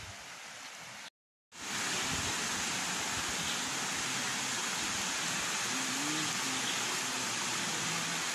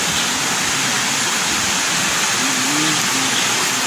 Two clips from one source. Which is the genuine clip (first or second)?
first